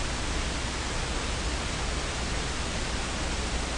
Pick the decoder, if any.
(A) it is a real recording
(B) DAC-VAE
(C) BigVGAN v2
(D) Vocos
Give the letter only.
A